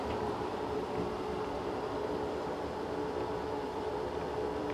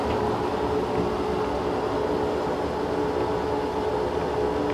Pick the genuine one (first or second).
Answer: second